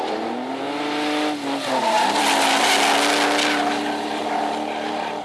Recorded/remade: recorded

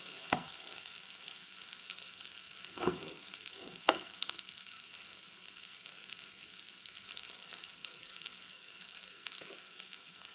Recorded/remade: remade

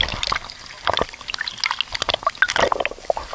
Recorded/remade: recorded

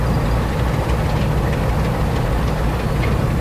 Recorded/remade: recorded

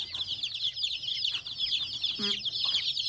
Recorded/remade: recorded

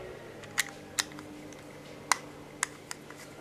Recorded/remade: recorded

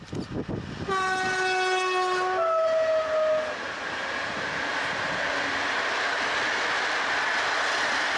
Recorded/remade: recorded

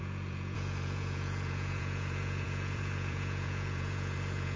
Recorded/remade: remade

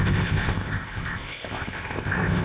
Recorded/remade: remade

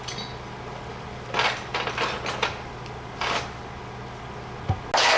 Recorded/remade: recorded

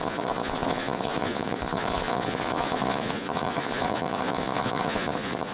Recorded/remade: remade